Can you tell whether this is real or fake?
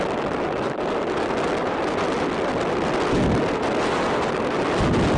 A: real